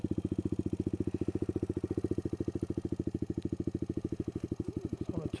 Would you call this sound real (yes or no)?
yes